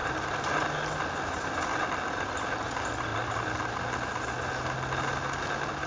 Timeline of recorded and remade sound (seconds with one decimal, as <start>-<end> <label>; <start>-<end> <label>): 0.0-5.9 recorded